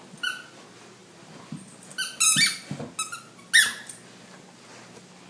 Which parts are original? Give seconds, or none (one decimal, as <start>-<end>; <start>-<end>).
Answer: 0.0-5.3